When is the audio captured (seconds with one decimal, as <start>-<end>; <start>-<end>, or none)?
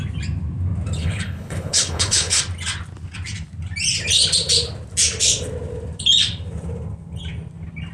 0.0-1.0; 2.4-7.9